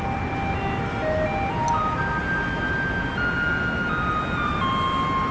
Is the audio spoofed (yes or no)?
no